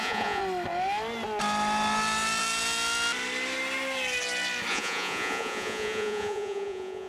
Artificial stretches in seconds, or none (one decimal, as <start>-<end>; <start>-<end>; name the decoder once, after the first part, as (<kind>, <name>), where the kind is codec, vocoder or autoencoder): 0.0-0.4 (vocoder, Vocos); 4.7-7.1